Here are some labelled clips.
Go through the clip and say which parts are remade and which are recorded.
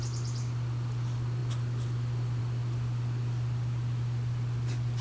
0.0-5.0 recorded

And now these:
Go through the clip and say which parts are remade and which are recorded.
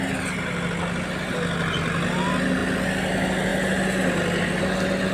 0.0-5.1 recorded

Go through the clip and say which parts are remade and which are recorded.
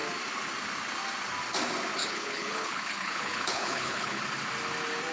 0.0-2.0 recorded; 2.0-4.2 remade; 4.2-5.1 recorded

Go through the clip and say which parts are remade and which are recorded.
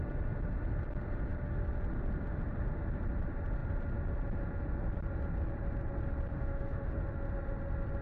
0.0-6.3 recorded; 6.3-7.0 remade; 7.0-8.0 recorded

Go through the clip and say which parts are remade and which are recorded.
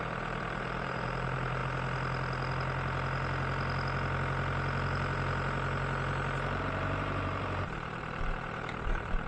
0.0-1.6 remade; 1.6-6.6 recorded; 6.6-9.3 remade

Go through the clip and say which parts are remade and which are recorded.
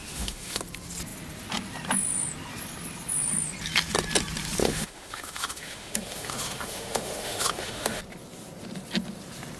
0.0-0.6 remade; 0.6-4.6 recorded; 4.6-8.0 remade; 8.0-9.6 recorded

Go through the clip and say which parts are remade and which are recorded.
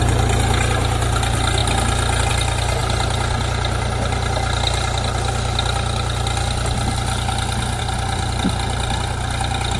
0.0-9.8 recorded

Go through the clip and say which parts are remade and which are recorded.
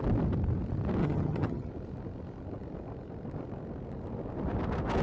0.0-1.0 recorded; 1.0-1.7 remade; 1.7-5.0 recorded